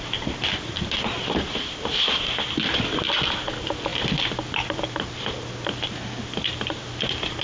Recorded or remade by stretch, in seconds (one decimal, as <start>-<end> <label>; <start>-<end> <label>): 0.0-7.4 recorded